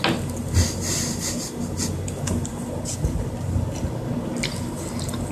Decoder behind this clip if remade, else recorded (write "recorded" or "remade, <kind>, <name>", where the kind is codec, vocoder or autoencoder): recorded